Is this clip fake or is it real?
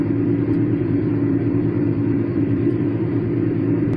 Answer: fake